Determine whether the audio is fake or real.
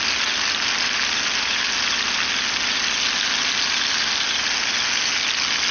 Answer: real